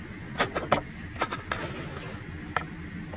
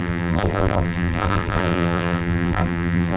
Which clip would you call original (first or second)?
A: first